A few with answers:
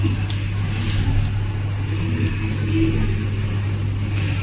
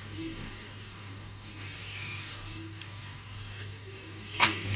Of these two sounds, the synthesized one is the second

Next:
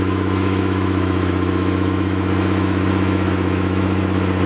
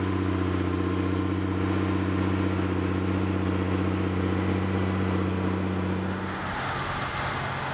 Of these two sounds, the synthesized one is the first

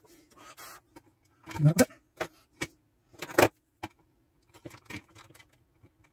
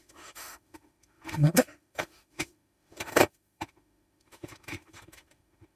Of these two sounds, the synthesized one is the second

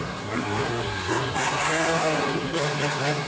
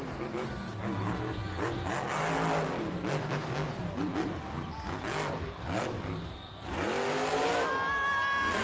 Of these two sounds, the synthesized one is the first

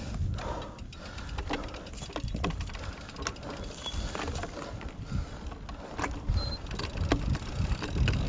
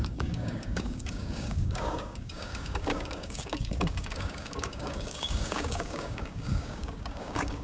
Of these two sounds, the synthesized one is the second